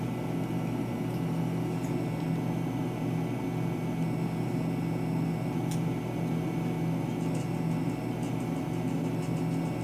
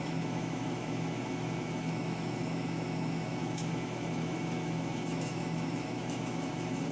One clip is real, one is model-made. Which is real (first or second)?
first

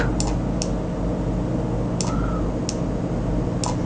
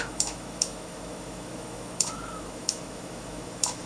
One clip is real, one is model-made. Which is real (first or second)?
first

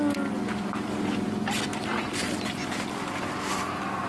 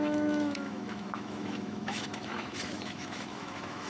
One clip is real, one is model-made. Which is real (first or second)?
first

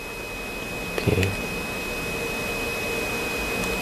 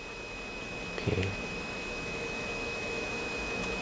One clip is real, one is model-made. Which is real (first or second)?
first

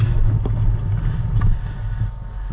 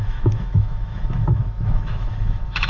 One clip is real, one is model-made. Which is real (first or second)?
first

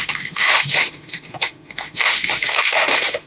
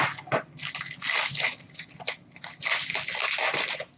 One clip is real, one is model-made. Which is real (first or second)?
second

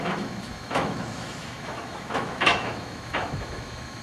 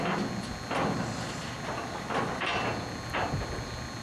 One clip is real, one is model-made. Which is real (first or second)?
second